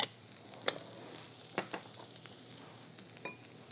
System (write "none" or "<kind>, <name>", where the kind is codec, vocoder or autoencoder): none